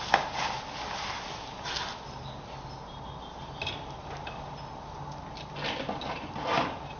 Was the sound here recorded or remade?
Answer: recorded